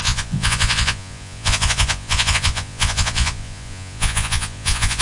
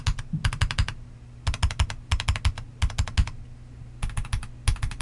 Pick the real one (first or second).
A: second